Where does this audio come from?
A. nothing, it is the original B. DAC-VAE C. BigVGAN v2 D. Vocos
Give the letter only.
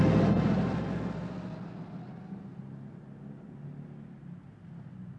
A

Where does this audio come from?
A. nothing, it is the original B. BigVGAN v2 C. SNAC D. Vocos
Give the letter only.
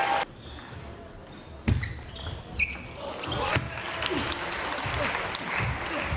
A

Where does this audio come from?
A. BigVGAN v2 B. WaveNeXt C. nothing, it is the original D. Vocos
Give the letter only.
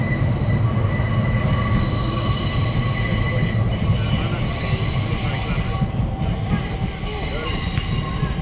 C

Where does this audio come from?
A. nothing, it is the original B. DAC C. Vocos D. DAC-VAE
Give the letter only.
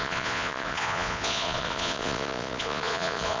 C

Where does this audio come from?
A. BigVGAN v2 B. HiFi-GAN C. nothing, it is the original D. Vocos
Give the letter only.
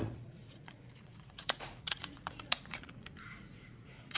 D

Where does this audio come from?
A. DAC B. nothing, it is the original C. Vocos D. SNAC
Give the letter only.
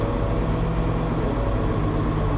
B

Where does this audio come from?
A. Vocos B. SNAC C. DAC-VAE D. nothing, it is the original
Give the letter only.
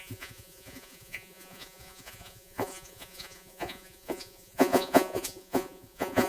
A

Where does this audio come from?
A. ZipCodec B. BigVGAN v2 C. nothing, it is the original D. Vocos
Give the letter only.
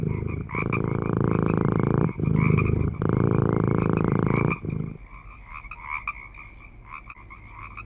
C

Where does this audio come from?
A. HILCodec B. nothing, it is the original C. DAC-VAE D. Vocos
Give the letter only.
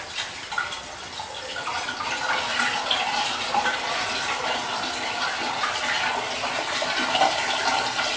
B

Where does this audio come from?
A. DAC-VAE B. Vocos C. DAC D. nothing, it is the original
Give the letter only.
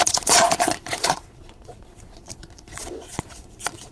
B